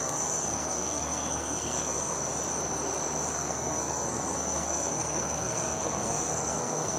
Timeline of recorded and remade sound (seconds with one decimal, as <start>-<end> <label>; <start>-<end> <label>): 0.0-2.2 remade; 2.2-3.3 recorded; 3.3-7.0 remade